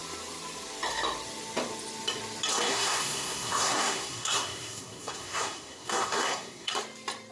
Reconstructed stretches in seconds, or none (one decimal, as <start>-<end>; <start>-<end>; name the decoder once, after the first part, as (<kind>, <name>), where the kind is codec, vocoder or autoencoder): 2.5-6.7 (codec, SNAC)